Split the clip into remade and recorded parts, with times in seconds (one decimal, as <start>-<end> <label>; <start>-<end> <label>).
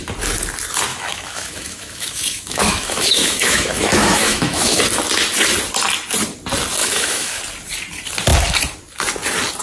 0.0-0.9 recorded; 0.9-4.8 remade; 4.8-6.8 recorded; 6.8-7.4 remade; 7.4-9.6 recorded